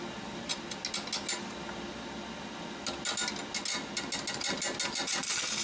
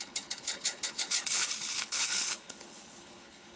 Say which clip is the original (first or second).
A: first